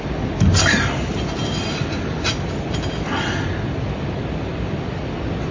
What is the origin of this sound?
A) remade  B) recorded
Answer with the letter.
B